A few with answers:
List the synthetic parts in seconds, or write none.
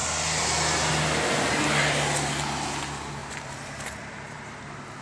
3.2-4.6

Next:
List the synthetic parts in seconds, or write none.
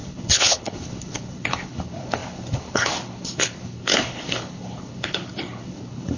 0.0-6.2